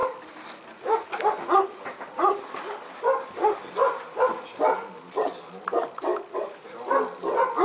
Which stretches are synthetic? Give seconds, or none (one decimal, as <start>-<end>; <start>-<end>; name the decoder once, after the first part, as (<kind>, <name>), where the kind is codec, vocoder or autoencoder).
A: none